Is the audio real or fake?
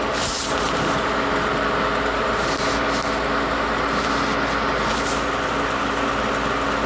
real